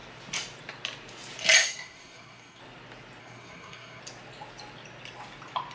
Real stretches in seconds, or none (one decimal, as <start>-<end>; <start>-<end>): 0.0-1.6; 2.6-3.2; 4.0-5.7